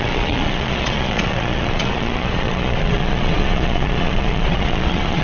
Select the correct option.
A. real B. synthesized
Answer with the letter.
B